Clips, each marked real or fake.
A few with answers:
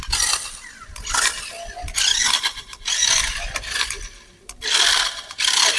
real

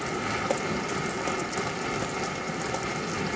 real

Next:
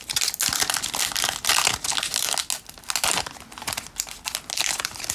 real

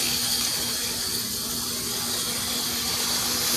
real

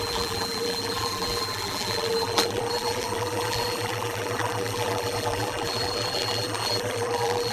fake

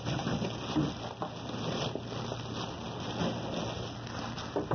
real